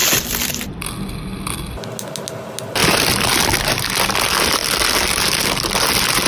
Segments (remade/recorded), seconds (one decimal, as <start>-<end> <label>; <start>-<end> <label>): 0.0-0.9 remade; 0.9-6.3 recorded